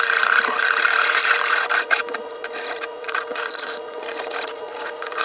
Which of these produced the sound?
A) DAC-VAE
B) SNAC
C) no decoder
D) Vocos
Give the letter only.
D